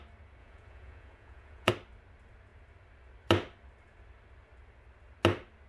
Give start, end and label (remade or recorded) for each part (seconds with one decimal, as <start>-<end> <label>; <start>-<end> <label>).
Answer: 0.0-0.4 recorded; 0.4-1.7 remade; 1.7-5.7 recorded